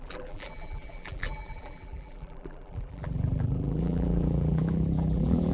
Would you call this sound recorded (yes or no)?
no